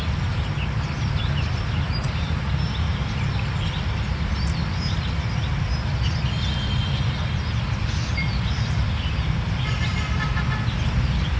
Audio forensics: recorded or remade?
recorded